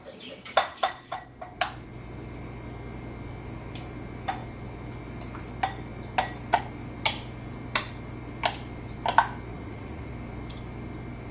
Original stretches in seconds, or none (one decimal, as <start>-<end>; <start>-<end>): 0.0-0.7; 1.2-9.5; 10.1-11.3